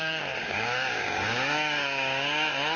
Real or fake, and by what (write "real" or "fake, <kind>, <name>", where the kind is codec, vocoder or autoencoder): fake, codec, DAC